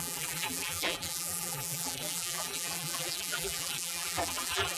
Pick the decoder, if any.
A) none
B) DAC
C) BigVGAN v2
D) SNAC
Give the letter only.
C